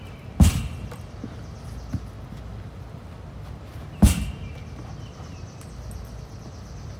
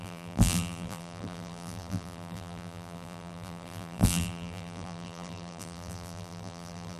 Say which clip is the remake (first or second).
second